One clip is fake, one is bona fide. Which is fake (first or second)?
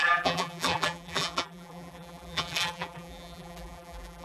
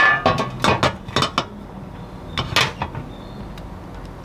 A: first